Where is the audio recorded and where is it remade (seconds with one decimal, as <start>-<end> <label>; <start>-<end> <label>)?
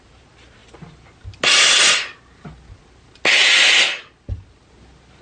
0.0-5.2 recorded